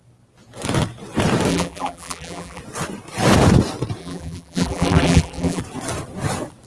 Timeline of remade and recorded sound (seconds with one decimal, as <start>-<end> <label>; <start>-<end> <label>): 0.0-1.5 recorded; 1.5-2.6 remade; 2.6-4.0 recorded; 4.0-5.6 remade; 5.6-6.7 recorded